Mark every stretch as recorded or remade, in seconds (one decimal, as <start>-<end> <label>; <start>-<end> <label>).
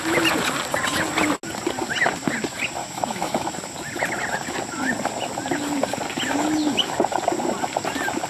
0.0-2.8 recorded; 2.8-3.5 remade; 3.5-8.3 recorded